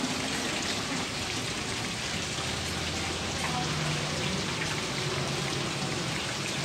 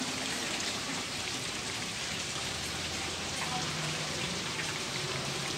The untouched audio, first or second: first